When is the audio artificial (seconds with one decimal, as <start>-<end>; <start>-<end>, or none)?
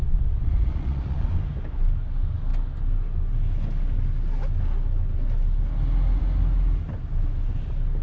0.0-1.4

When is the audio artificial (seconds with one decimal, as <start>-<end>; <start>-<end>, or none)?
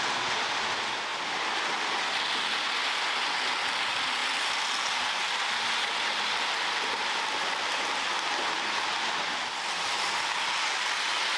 none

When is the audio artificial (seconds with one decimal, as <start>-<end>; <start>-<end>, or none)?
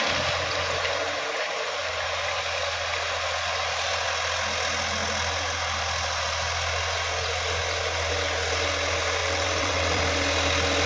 9.2-10.0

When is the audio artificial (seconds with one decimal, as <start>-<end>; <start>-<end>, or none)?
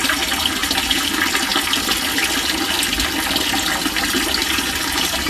0.6-1.1; 4.4-5.3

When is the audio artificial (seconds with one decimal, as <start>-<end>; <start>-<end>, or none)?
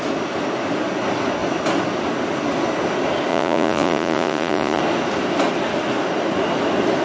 3.3-4.8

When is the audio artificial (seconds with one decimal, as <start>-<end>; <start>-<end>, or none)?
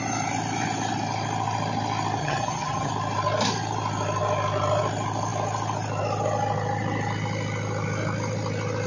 2.2-2.9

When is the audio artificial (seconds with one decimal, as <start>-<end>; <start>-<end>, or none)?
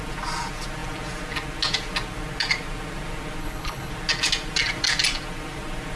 3.4-3.9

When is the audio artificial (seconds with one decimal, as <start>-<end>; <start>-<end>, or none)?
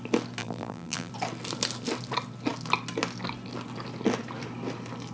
0.4-1.1